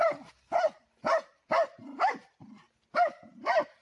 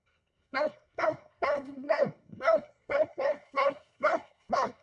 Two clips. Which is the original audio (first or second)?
first